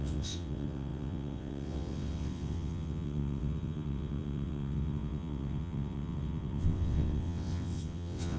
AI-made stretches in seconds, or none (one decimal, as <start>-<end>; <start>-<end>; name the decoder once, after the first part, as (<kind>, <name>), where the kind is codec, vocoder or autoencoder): 0.0-8.4 (vocoder, WaveNeXt)